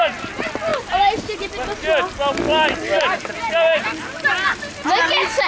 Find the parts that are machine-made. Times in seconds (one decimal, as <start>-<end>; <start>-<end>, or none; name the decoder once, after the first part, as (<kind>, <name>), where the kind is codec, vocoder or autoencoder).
none

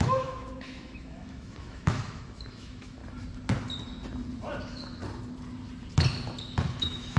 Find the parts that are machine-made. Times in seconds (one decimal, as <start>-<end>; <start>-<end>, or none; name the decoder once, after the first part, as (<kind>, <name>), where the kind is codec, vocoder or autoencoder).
0.0-3.0 (autoencoder, DAC-VAE); 4.6-5.0; 6.8-7.2